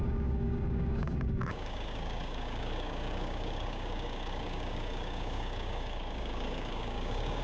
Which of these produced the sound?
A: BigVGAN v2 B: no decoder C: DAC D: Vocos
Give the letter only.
C